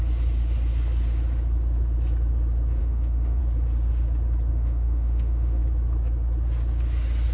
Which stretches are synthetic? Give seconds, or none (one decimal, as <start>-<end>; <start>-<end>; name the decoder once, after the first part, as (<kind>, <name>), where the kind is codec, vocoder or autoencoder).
2.8-3.4 (autoencoder, DAC-VAE); 4.5-5.6

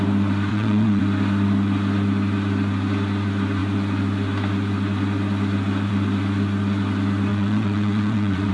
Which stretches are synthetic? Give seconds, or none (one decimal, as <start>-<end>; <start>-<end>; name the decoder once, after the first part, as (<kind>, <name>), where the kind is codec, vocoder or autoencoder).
0.5-1.0 (vocoder, Vocos); 7.3-8.5

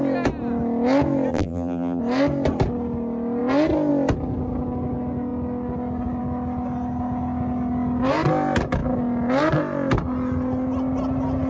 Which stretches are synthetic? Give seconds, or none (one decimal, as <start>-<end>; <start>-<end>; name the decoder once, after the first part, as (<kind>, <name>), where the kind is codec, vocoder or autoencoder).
1.3-2.0 (vocoder, BigVGAN v2)

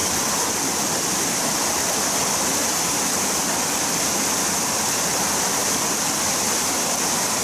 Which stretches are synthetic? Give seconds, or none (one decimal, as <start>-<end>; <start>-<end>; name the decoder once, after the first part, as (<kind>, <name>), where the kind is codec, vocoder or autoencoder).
none

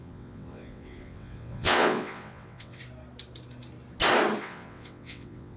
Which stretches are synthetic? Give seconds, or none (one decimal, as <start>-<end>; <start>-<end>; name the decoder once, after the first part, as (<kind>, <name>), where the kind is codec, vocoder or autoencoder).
0.0-2.8 (vocoder, WaveNeXt); 4.4-5.6

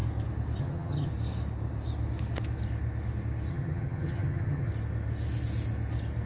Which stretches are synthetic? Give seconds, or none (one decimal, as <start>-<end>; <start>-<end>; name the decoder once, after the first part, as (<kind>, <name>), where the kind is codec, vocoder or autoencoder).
0.6-1.1 (vocoder, HiFi-GAN); 3.5-4.7